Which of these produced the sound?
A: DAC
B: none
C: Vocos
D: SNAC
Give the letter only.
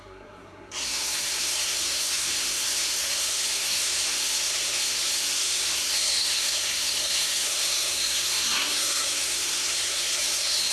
D